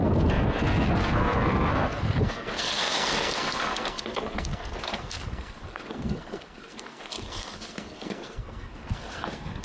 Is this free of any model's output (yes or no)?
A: no